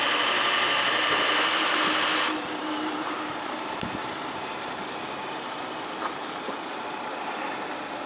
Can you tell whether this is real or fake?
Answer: real